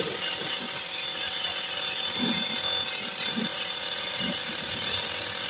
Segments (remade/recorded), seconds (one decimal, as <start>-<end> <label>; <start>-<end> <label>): 0.0-3.5 recorded; 3.5-4.7 remade; 4.7-5.5 recorded